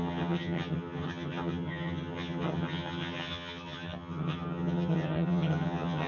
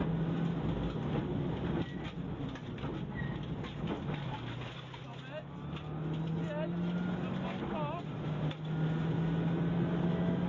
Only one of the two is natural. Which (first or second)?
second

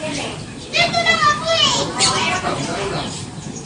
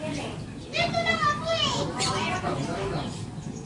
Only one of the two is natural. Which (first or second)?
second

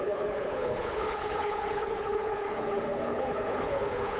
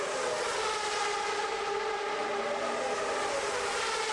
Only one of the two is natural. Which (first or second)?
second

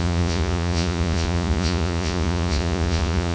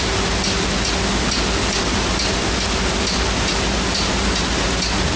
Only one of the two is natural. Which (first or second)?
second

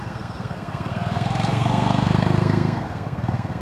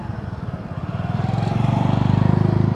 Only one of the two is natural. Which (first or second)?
second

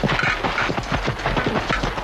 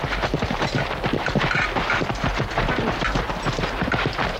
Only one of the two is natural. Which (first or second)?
first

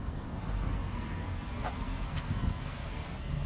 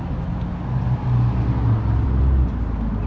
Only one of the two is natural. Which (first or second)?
second